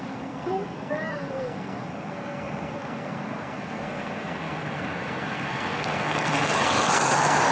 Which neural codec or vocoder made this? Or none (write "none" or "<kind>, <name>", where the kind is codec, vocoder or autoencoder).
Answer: codec, SNAC